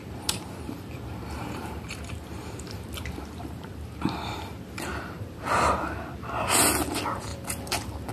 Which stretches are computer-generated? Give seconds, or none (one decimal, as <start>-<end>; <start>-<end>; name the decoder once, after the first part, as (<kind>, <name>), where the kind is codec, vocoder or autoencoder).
0.0-3.7 (vocoder, BigVGAN v2); 4.9-5.4; 7.3-8.1